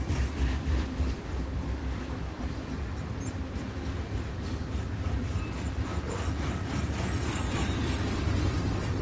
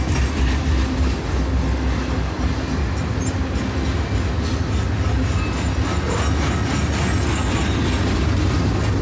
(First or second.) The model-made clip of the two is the first